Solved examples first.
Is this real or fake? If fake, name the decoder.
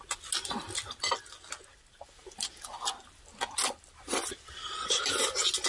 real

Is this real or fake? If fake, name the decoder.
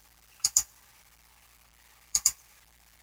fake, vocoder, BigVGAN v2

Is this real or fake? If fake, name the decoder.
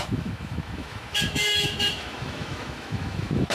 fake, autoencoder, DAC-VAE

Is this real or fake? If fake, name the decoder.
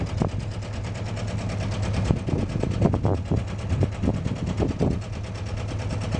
real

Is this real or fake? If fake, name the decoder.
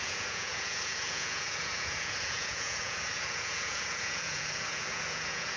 fake, vocoder, Vocos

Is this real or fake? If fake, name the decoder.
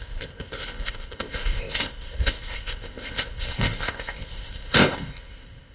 fake, codec, ZipCodec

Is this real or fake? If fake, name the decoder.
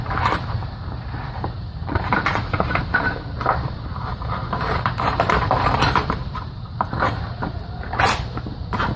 fake, vocoder, BigVGAN v2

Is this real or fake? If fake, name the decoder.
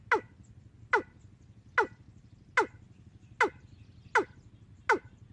real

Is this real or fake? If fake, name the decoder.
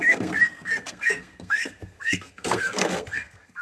fake, codec, SNAC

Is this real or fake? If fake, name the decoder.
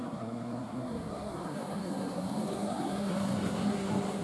fake, codec, SNAC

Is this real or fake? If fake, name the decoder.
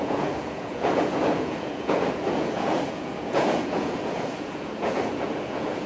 fake, vocoder, Vocos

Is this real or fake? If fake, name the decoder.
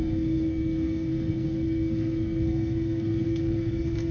fake, codec, SNAC